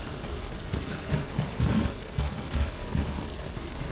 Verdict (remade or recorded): remade